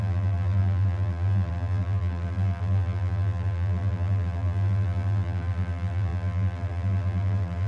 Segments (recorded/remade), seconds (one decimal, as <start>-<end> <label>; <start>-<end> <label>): 0.0-7.7 remade

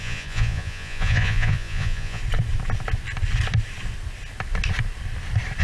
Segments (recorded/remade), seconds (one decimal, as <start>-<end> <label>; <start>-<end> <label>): 0.0-2.2 remade; 2.2-5.6 recorded

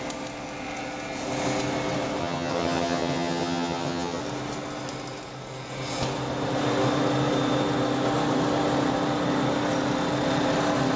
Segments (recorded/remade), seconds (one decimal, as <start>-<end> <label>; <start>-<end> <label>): 0.0-2.2 recorded; 2.2-4.2 remade; 4.2-11.0 recorded

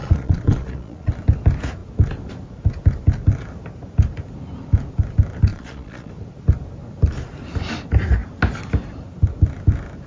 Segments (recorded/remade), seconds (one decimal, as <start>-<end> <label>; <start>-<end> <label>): 0.0-1.1 remade; 1.1-5.5 recorded; 5.5-6.1 remade; 6.1-10.1 recorded